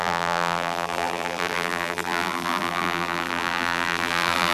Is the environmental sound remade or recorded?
remade